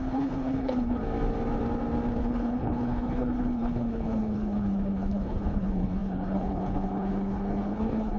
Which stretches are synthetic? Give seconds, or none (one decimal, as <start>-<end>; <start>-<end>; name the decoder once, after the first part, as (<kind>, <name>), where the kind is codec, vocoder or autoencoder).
0.0-1.0 (codec, HILCodec); 2.2-8.2